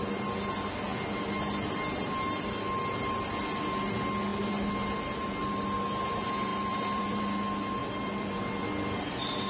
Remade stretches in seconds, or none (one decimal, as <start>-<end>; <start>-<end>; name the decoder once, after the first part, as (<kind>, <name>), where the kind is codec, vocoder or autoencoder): 6.5-7.2 (vocoder, BigVGAN v2); 7.8-9.5